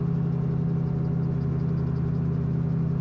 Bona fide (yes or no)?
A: yes